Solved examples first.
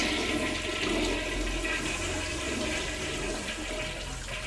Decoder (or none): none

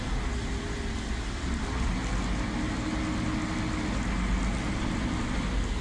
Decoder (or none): none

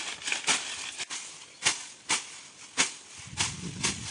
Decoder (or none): none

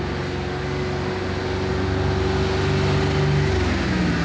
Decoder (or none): none